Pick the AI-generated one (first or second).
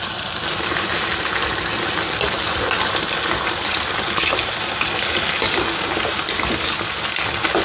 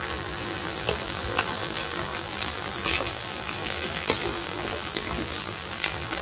second